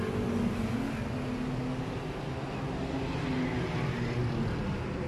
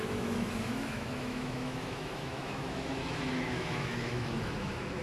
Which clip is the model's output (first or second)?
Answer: second